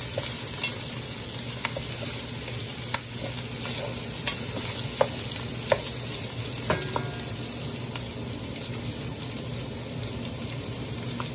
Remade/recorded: recorded